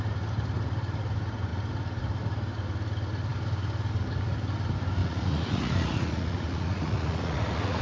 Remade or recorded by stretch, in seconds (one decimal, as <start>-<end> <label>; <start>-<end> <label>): 0.0-5.0 recorded; 5.0-7.8 remade